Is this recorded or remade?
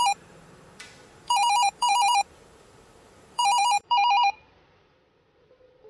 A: remade